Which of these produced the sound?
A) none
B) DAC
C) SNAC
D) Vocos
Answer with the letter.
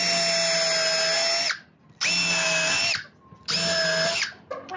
A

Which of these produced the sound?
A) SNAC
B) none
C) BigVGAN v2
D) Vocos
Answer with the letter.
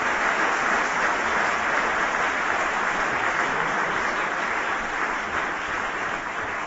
B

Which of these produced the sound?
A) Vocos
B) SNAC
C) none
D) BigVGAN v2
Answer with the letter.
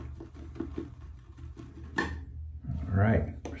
C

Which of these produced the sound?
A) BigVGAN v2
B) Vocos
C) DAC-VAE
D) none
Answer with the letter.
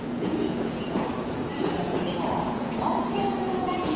B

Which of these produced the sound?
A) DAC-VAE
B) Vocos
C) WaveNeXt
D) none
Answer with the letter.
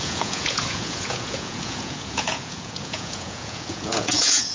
B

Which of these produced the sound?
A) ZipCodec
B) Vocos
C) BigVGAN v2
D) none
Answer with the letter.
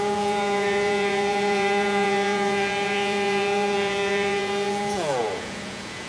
B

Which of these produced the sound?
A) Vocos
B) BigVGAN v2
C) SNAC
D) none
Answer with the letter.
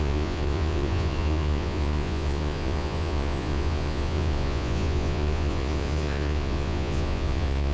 A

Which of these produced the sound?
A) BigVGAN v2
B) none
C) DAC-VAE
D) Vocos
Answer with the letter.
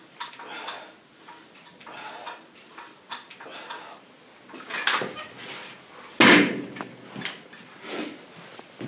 B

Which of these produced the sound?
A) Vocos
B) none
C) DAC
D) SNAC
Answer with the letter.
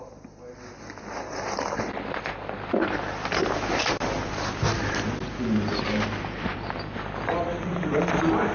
B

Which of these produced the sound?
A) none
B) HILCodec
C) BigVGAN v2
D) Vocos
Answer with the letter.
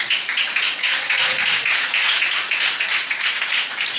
D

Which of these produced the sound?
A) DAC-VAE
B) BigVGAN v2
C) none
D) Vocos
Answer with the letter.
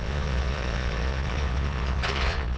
D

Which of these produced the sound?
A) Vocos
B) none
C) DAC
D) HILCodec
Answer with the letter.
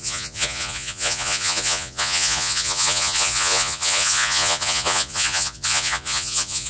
A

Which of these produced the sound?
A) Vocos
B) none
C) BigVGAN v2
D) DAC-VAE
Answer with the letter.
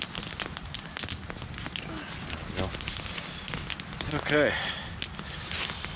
B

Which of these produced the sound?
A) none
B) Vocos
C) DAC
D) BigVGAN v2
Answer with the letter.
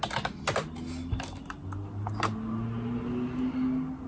A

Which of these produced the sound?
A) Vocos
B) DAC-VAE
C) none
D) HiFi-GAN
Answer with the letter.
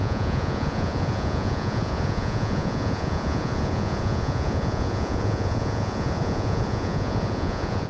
A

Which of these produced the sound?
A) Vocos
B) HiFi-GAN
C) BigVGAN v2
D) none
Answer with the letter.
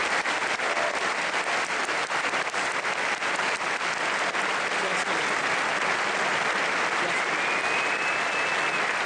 D